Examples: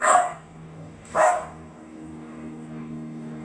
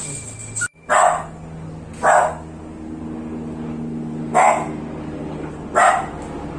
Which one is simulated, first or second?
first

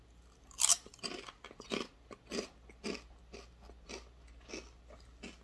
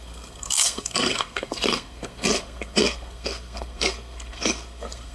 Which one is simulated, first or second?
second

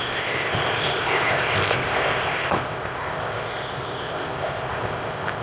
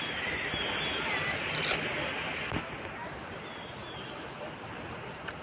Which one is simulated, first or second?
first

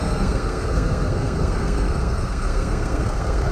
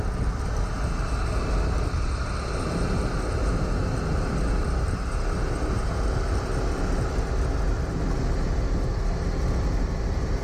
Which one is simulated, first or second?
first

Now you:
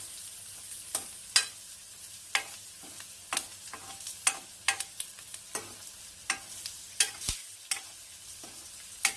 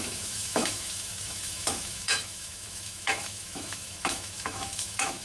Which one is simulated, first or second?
second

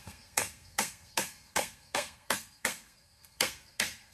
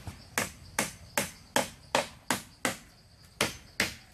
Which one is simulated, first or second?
first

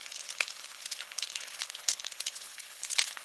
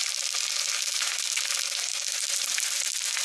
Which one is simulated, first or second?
first